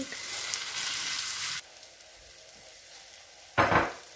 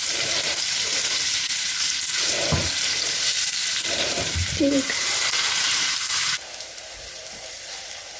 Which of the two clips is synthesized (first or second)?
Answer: second